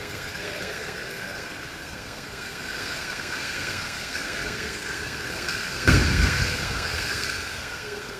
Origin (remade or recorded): remade